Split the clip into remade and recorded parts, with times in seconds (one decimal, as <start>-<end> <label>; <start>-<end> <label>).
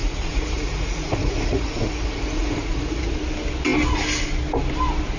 0.0-3.1 remade; 3.1-5.2 recorded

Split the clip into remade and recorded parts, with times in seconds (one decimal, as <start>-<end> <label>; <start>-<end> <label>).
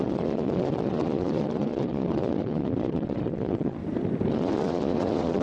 0.0-3.8 remade; 3.8-4.3 recorded; 4.3-5.4 remade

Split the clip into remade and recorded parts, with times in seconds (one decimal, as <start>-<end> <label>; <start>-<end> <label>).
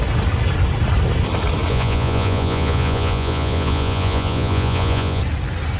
0.0-1.7 recorded; 1.7-5.2 remade; 5.2-5.8 recorded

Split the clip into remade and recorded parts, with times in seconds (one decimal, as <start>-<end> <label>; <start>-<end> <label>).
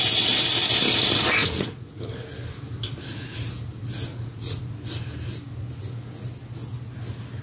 0.0-1.4 recorded; 1.4-2.0 remade; 2.0-4.1 recorded; 4.1-4.6 remade; 4.6-7.4 recorded